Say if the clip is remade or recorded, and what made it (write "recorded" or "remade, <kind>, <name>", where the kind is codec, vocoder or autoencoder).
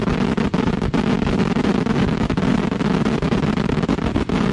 recorded